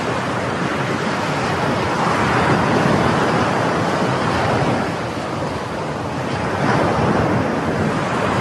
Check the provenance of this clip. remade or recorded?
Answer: recorded